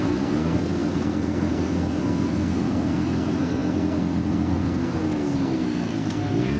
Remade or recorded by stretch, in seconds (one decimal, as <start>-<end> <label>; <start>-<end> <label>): 0.0-6.6 remade